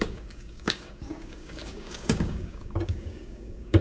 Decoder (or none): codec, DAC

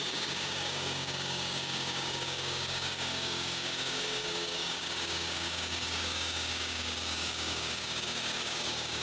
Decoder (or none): codec, DAC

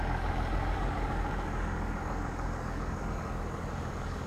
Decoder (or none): codec, DAC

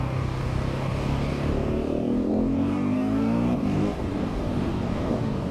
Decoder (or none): codec, DAC